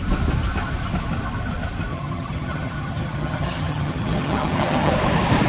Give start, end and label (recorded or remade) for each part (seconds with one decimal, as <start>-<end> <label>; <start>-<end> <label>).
0.0-1.9 recorded; 1.9-4.9 remade; 4.9-5.5 recorded